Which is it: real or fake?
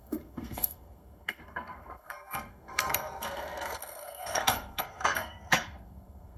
fake